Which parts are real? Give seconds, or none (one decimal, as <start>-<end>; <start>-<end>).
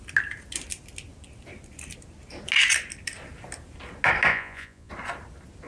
0.0-4.3; 4.9-5.7